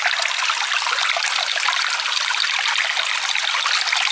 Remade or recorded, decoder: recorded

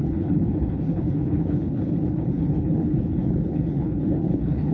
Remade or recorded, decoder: remade, codec, HILCodec